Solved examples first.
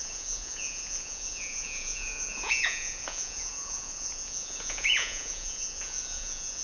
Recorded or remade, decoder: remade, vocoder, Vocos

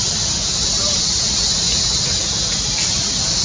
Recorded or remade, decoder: recorded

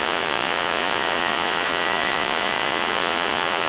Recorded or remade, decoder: remade, vocoder, Vocos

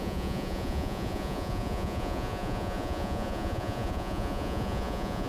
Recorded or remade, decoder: remade, vocoder, Vocos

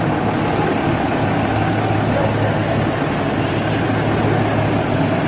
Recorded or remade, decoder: recorded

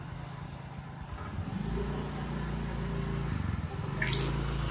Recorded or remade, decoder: recorded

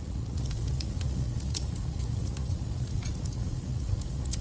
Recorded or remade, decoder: remade, vocoder, Vocos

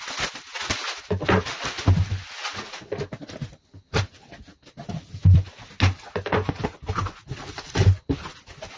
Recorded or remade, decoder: recorded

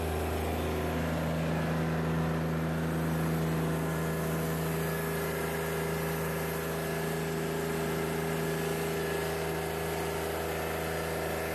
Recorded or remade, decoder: recorded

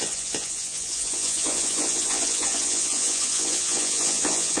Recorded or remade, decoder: remade, vocoder, Vocos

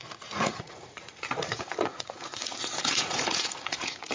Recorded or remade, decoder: remade, vocoder, Vocos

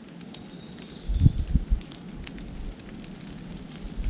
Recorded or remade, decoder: recorded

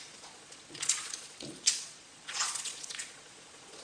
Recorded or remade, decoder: remade, vocoder, Vocos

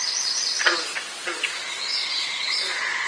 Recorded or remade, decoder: remade, vocoder, Vocos